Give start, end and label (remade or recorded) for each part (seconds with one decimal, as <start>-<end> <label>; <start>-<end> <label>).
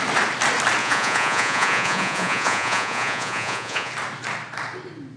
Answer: 0.0-0.8 recorded; 0.8-3.9 remade; 3.9-5.2 recorded